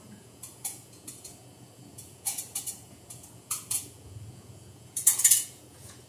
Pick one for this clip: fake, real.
fake